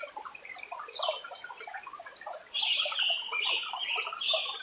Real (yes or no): no